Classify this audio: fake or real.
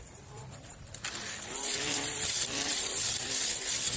fake